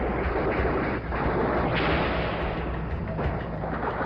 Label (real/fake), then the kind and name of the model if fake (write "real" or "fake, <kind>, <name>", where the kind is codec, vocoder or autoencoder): real